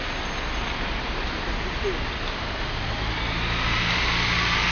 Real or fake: real